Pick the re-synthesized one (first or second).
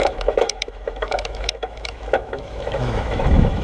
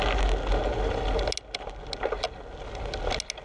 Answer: first